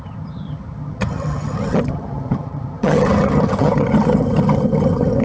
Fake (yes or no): yes